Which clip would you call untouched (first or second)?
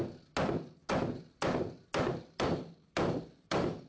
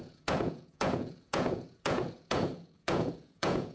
first